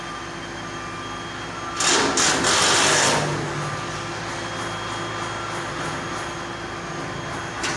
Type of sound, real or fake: real